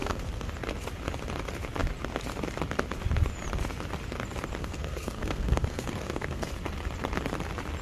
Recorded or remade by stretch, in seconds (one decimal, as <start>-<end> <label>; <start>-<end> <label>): 0.0-0.5 remade; 0.5-4.6 recorded; 4.6-6.5 remade; 6.5-7.8 recorded